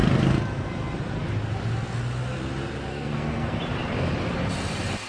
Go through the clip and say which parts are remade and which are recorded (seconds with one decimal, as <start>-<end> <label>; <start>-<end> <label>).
0.0-2.9 recorded; 2.9-3.6 remade; 3.6-5.1 recorded